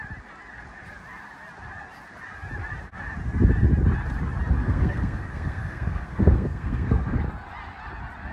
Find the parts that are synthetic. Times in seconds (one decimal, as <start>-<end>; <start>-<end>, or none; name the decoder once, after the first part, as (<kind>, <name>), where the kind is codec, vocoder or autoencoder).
4.6-7.2 (codec, SNAC)